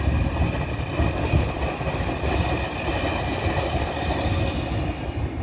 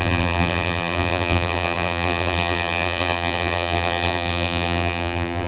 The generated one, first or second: second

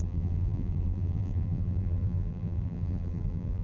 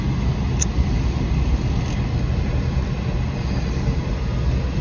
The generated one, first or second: first